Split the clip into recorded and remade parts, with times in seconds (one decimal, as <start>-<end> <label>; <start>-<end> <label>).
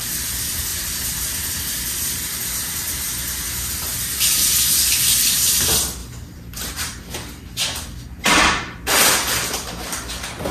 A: 0.0-10.5 recorded